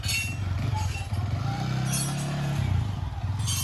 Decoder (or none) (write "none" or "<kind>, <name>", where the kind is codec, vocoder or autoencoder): none